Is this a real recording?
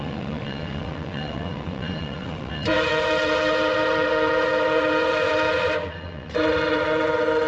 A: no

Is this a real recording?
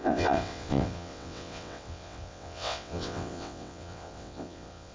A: no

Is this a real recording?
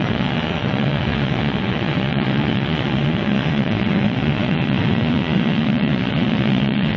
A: no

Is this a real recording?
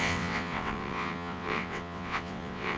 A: no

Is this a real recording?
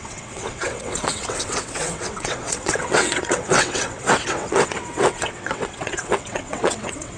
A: no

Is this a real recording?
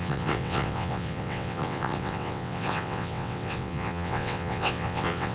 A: no